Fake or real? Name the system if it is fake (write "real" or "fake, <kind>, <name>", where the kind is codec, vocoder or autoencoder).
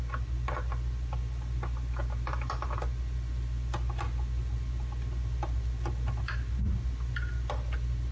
real